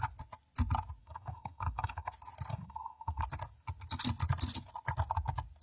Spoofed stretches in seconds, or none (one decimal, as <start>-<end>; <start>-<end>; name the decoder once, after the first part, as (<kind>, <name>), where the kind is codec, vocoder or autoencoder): 1.0-2.1 (codec, DAC); 2.5-3.2